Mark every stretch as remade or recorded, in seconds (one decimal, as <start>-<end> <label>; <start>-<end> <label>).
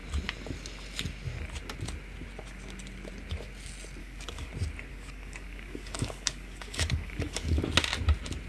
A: 0.0-4.0 recorded; 4.0-4.5 remade; 4.5-4.9 recorded; 4.9-7.6 remade; 7.6-8.5 recorded